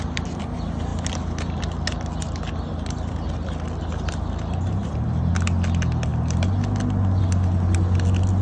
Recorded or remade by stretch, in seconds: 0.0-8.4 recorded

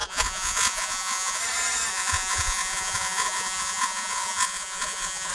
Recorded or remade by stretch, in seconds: 0.0-1.4 remade; 1.4-1.9 recorded; 1.9-5.3 remade